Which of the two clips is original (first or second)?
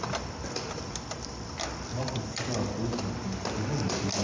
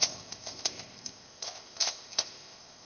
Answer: first